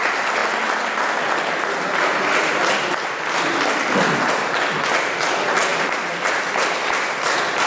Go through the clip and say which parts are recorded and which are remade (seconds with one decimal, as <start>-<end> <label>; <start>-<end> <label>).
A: 0.0-5.7 recorded; 5.7-7.3 remade; 7.3-7.7 recorded